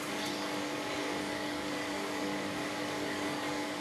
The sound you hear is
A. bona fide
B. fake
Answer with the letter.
B